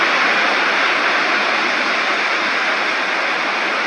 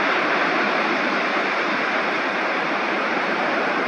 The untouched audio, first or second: first